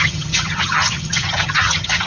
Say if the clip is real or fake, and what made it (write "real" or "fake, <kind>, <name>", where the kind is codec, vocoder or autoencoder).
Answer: fake, vocoder, HiFi-GAN